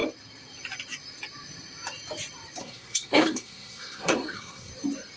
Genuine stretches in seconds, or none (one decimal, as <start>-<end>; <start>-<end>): 0.0-2.6; 4.7-5.2